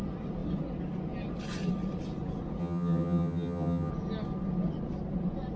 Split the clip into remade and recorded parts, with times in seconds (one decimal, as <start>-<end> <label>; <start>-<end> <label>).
0.0-2.6 recorded; 2.6-3.9 remade; 3.9-5.6 recorded